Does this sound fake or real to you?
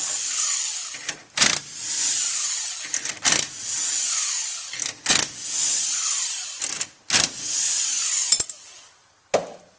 real